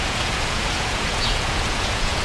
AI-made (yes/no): yes